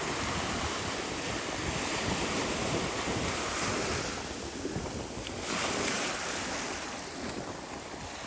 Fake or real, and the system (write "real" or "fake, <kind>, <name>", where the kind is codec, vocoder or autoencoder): real